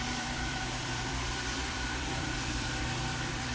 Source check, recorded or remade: remade